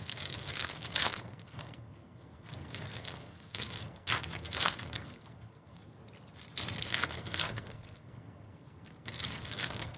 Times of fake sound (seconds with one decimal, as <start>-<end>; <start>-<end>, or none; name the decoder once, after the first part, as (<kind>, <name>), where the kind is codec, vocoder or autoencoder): 0.0-6.0 (codec, SNAC); 6.8-10.0